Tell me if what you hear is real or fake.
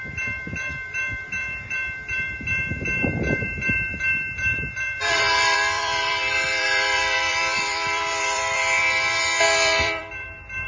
fake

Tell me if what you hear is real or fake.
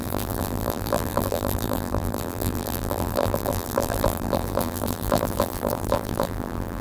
fake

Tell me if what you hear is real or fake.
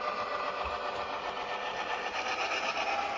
fake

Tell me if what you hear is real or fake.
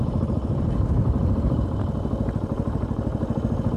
fake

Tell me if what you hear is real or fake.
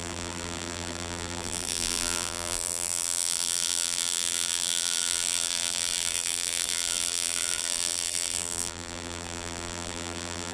fake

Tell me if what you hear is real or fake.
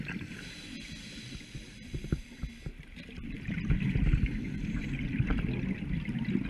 real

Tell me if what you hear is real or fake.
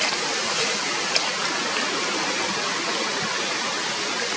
real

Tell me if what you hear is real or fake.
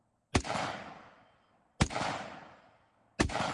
real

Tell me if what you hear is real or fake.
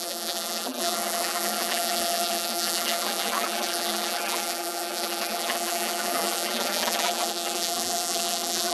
fake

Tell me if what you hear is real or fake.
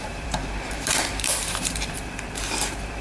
fake